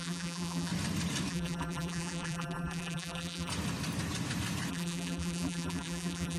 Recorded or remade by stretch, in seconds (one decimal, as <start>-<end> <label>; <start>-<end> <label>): 0.0-0.7 remade; 0.7-1.3 recorded; 1.3-3.5 remade; 3.5-4.7 recorded; 4.7-6.4 remade